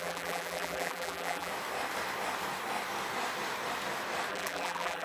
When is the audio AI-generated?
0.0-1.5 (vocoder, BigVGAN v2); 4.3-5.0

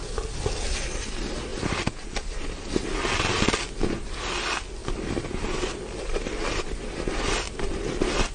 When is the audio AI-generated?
1.5-2.8 (vocoder, BigVGAN v2); 4.8-6.8

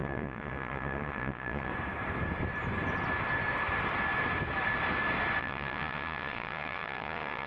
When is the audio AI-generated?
0.0-1.7 (vocoder, Vocos); 5.4-7.5

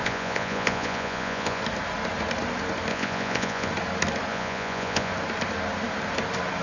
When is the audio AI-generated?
0.0-1.6 (vocoder, Vocos); 2.9-3.7; 4.3-5.1